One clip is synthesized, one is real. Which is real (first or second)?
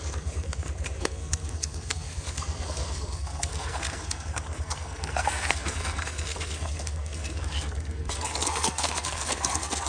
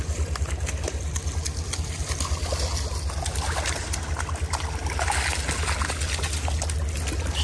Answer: second